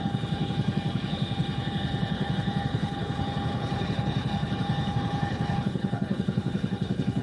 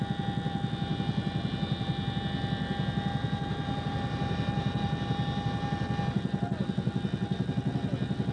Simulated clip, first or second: first